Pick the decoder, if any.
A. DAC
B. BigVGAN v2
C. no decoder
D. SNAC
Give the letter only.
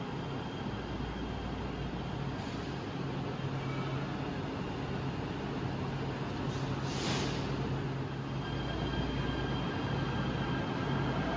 C